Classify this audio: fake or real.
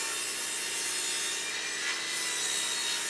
real